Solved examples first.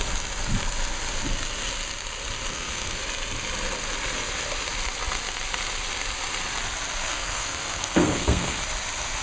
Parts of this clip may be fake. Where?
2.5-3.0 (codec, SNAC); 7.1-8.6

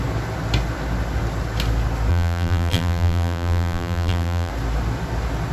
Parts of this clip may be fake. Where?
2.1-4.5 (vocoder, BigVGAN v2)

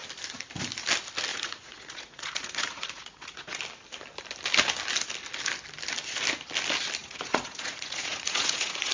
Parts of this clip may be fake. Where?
1.3-3.6 (vocoder, Vocos); 7.0-8.9